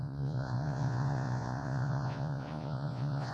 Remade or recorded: remade